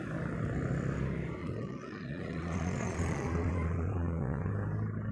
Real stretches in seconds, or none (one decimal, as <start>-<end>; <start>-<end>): 0.0-1.4; 4.5-5.1

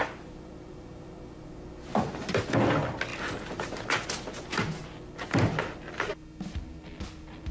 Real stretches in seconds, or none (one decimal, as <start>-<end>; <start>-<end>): 1.5-3.1; 4.1-7.5

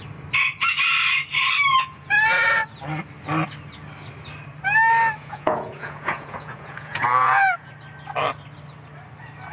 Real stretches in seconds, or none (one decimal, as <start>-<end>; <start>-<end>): 0.0-1.7; 2.2-5.2; 7.7-9.5

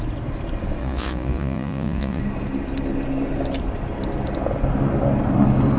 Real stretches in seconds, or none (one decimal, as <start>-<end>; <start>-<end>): 0.0-0.8; 2.2-5.8

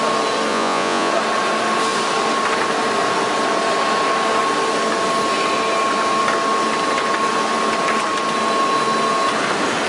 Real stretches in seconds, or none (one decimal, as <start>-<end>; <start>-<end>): 0.0-0.5; 1.1-9.9